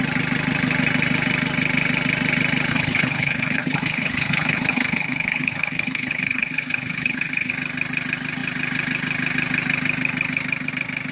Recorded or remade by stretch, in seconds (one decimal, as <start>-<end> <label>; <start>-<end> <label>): 0.0-2.7 recorded; 2.7-7.5 remade; 7.5-11.1 recorded